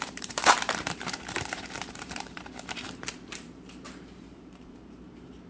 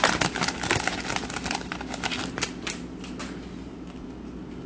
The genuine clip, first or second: second